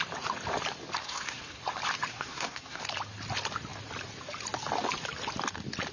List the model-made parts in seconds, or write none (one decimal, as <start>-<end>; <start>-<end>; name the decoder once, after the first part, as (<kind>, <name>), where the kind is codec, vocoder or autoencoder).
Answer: 1.0-1.6 (codec, SNAC); 2.1-2.8